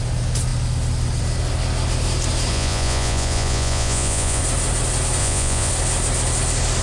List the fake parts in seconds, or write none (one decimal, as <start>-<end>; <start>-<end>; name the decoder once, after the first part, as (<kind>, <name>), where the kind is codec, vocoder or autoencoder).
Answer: 2.5-4.4 (vocoder, Vocos); 5.2-5.7